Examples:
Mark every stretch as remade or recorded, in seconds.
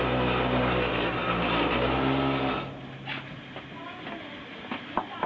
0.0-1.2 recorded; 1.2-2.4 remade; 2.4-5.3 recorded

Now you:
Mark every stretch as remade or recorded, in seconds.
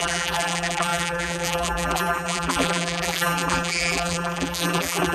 0.0-5.1 remade